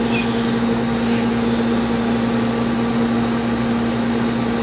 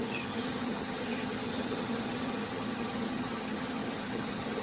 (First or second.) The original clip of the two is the first